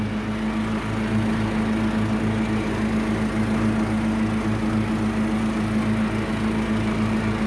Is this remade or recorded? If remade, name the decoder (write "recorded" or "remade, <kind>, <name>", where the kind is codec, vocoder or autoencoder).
recorded